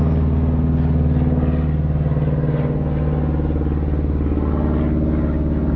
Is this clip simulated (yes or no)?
no